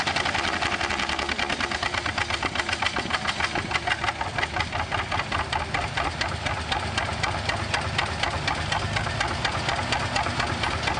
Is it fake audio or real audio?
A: real